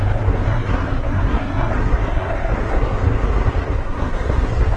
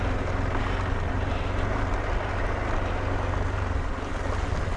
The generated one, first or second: first